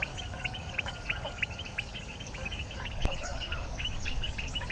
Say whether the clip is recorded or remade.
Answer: remade